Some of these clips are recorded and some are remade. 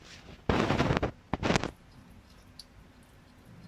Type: recorded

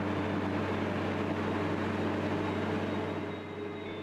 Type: recorded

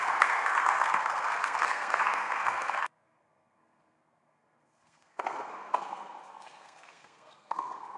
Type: remade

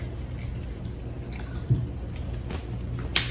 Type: recorded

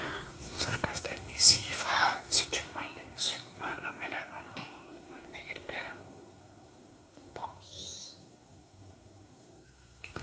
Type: remade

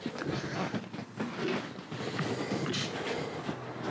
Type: recorded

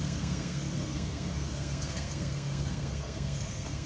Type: remade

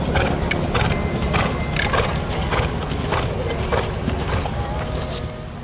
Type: recorded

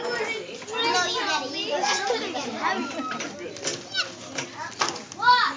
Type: recorded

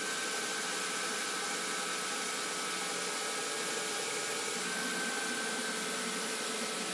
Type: recorded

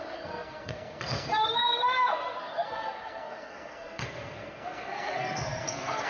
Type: remade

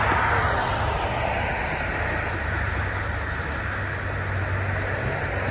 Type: recorded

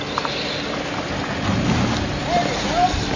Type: recorded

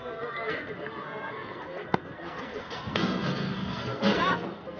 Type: remade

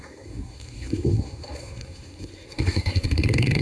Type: remade